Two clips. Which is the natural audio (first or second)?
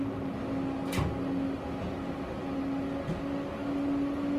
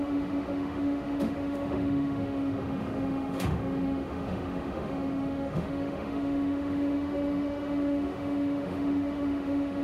first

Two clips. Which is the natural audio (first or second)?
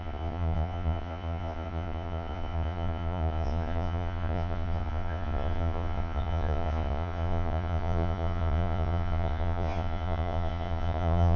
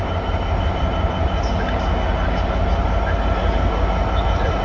second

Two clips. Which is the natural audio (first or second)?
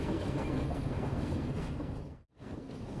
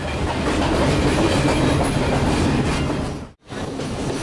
second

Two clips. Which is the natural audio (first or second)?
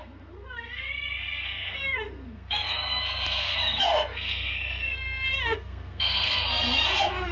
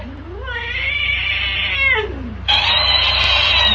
second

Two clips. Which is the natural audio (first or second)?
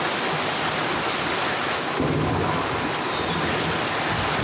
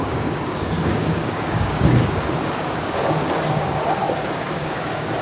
first